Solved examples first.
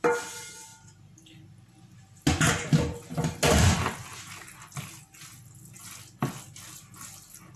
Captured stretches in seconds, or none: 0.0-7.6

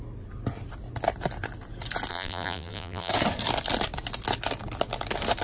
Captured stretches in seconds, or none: 0.0-2.1; 3.1-5.4

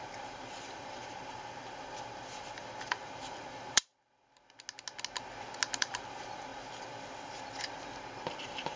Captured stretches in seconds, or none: 3.9-5.8; 6.5-8.4

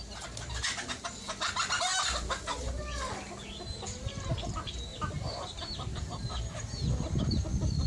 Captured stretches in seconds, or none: 0.0-4.9; 6.4-7.9